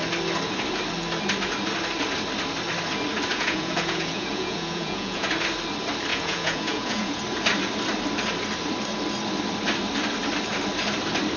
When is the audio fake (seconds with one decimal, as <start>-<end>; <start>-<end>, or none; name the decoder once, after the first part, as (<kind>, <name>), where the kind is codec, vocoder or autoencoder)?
3.3-5.3 (vocoder, Vocos); 6.1-7.2